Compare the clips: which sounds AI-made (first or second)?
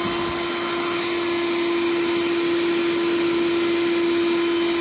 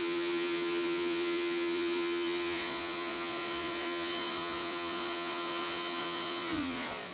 second